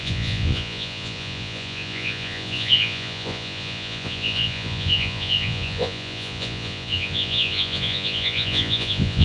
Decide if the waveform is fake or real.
fake